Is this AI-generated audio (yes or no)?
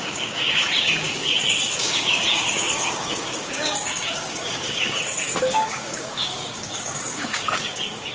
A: yes